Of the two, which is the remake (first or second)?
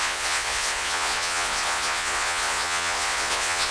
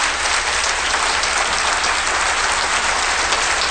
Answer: first